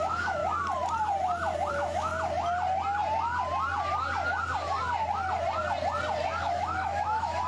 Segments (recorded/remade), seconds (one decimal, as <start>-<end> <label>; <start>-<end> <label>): 0.0-0.4 remade; 0.4-1.7 recorded; 1.7-2.1 remade; 2.1-6.4 recorded; 6.4-7.5 remade